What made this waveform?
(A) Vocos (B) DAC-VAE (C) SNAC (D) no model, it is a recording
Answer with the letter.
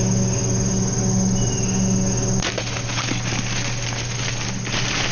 D